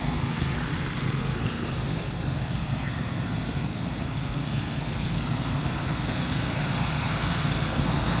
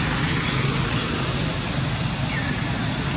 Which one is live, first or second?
second